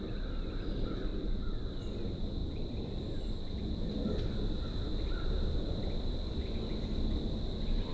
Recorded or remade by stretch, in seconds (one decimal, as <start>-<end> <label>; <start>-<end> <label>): 0.0-1.1 recorded; 1.1-1.7 remade; 1.7-2.4 recorded; 2.4-3.8 remade; 3.8-7.9 recorded